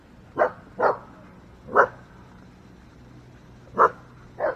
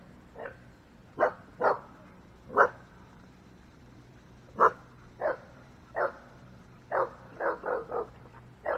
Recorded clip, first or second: first